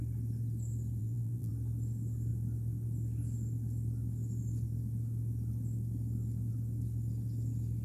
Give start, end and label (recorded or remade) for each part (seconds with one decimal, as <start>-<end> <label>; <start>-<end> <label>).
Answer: 0.0-1.0 recorded; 1.0-1.5 remade; 1.5-7.8 recorded